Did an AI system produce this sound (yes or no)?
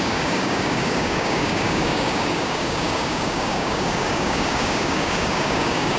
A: yes